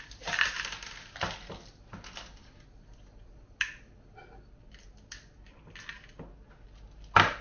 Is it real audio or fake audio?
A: real